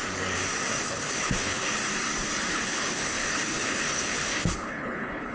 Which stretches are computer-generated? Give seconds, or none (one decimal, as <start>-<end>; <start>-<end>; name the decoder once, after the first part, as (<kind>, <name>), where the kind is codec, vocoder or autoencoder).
0.8-1.8 (codec, HILCodec); 2.5-5.3